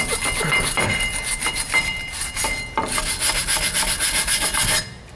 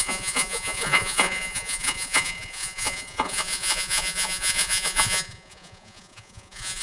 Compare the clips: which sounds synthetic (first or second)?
second